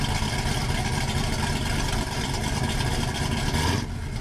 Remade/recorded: recorded